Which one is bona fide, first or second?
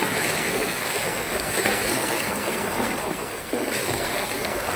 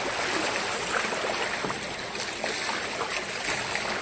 second